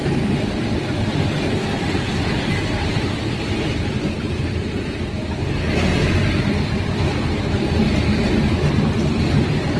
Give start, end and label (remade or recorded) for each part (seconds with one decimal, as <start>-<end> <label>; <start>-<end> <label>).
0.0-9.8 recorded